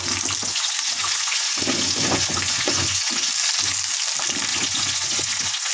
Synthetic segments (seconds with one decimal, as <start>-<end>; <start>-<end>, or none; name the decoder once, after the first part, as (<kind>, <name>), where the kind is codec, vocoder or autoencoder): 0.4-3.3 (vocoder, Vocos); 4.5-5.7